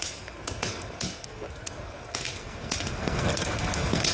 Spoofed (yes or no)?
yes